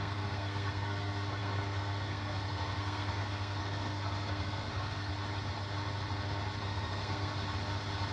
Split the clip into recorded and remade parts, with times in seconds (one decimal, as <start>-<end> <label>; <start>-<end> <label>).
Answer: 0.0-5.1 remade; 5.1-6.6 recorded; 6.6-7.3 remade; 7.3-8.1 recorded